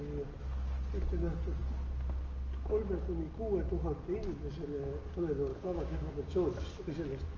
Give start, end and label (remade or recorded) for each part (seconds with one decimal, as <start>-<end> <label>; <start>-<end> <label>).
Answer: 0.0-5.5 recorded; 5.5-6.1 remade; 6.1-7.4 recorded